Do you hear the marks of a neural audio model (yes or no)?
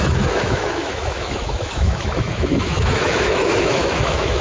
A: yes